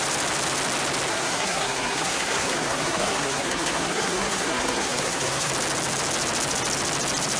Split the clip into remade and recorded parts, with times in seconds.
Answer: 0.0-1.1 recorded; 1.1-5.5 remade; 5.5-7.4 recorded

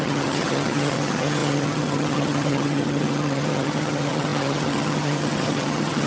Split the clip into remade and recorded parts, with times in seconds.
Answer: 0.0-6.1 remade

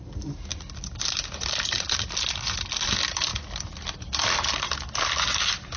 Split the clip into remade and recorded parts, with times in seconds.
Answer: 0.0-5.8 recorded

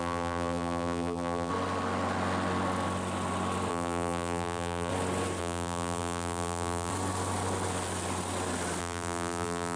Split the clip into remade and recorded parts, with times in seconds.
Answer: 0.0-1.5 remade; 1.5-3.7 recorded; 3.7-4.9 remade; 4.9-5.4 recorded; 5.4-6.9 remade; 6.9-8.8 recorded; 8.8-9.8 remade

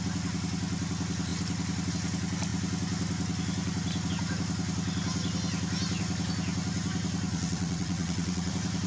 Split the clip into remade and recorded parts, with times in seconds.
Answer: 0.0-7.3 recorded; 7.3-8.5 remade; 8.5-8.9 recorded